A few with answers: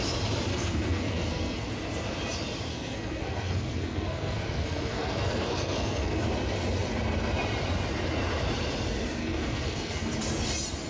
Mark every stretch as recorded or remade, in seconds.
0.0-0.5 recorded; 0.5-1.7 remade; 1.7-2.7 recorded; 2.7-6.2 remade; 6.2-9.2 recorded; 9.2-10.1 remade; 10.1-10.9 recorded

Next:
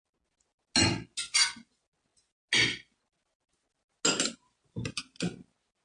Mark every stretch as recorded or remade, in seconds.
0.0-5.8 recorded

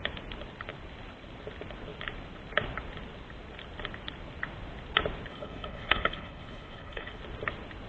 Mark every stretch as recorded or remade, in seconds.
0.0-5.3 recorded; 5.3-7.2 remade; 7.2-7.9 recorded

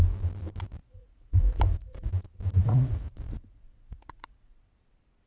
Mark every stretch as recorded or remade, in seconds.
0.0-0.8 recorded; 0.8-2.1 remade; 2.1-2.6 recorded; 2.6-4.6 remade; 4.6-5.3 recorded